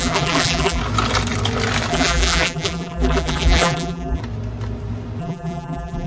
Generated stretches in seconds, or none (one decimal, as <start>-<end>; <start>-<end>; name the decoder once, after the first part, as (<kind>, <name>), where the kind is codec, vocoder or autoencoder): 0.0-0.8 (vocoder, BigVGAN v2); 1.9-4.2; 5.2-6.1